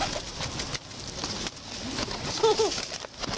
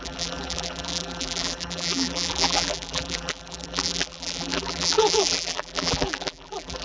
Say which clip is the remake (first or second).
second